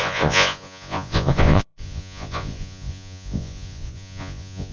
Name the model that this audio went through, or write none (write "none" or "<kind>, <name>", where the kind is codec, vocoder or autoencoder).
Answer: vocoder, Vocos